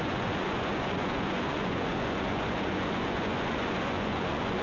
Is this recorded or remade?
remade